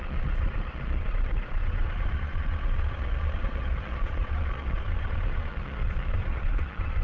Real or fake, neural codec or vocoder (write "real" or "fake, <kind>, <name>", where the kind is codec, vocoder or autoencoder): fake, vocoder, Vocos